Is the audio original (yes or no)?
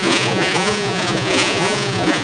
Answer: no